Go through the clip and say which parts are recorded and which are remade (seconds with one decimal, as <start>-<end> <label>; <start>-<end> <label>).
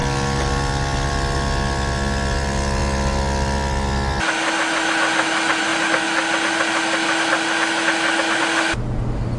0.0-9.4 recorded